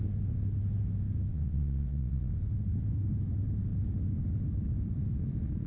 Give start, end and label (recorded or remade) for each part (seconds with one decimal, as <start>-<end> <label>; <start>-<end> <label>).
0.0-1.3 recorded; 1.3-2.3 remade; 2.3-5.7 recorded

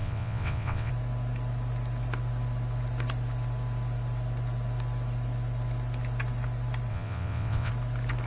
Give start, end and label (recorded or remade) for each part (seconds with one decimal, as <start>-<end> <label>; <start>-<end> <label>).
0.0-0.9 remade; 0.9-6.9 recorded; 6.9-7.7 remade; 7.7-8.3 recorded

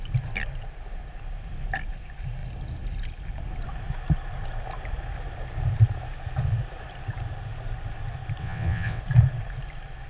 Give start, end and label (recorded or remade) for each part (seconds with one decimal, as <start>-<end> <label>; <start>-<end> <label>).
0.0-8.4 recorded; 8.4-9.0 remade; 9.0-10.1 recorded

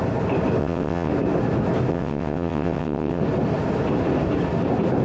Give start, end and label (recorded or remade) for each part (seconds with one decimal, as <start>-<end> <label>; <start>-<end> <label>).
0.0-0.6 recorded; 0.6-1.1 remade; 1.1-1.9 recorded; 1.9-3.2 remade; 3.2-5.0 recorded

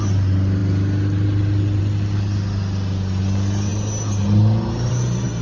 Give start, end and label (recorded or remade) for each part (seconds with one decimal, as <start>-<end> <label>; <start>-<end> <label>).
0.0-5.4 recorded

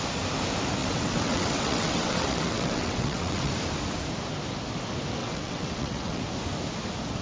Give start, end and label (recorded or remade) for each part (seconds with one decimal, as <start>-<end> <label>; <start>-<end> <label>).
0.0-0.8 recorded; 0.8-3.5 remade; 3.5-5.2 recorded; 5.2-6.2 remade; 6.2-7.2 recorded

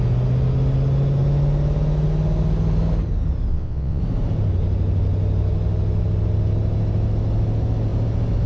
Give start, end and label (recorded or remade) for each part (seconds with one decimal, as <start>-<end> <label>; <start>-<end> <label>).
0.0-3.5 recorded; 3.5-4.0 remade; 4.0-8.5 recorded

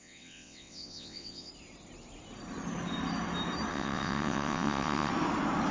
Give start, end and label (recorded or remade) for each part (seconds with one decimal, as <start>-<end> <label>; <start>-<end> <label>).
0.0-1.5 remade; 1.5-3.7 recorded; 3.7-5.1 remade; 5.1-5.7 recorded